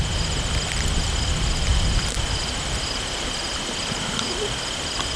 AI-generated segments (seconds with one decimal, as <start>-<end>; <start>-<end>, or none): 1.7-4.0